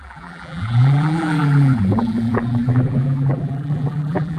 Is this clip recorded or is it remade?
remade